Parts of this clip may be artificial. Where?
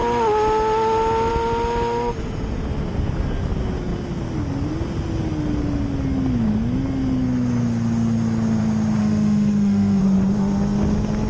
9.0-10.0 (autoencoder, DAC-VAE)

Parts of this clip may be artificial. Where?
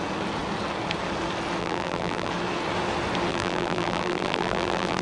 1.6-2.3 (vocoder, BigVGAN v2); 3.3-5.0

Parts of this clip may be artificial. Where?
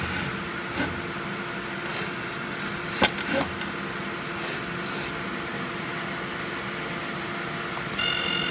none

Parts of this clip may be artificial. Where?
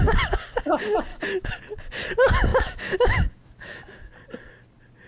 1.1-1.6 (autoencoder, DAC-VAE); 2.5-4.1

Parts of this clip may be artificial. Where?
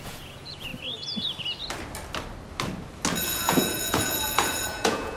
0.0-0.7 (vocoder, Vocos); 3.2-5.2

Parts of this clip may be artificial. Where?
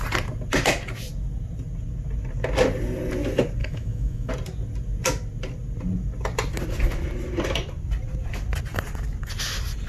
3.6-4.3 (autoencoder, DAC-VAE)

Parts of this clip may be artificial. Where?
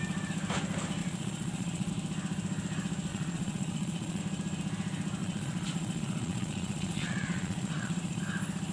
1.0-1.9 (vocoder, Vocos); 3.1-4.2; 5.2-8.2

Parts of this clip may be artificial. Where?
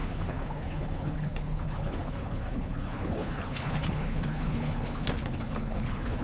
0.0-6.2 (codec, HILCodec)